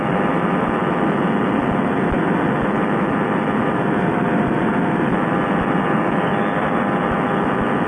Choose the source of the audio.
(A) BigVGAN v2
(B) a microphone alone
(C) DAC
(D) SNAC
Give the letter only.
B